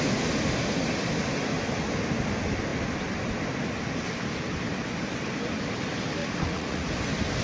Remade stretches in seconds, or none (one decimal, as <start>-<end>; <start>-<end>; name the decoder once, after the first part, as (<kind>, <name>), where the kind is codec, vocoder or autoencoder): 6.2-6.9 (vocoder, Vocos)